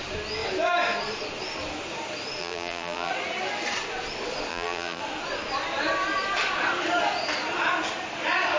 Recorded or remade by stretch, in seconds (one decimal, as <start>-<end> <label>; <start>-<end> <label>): 0.0-2.4 recorded; 2.4-3.1 remade; 3.1-4.5 recorded; 4.5-5.0 remade; 5.0-8.6 recorded